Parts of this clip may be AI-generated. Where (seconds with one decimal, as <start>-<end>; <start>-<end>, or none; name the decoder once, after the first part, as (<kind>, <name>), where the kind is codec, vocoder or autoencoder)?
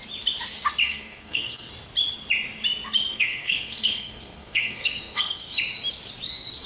0.8-1.7 (codec, SNAC); 3.1-5.6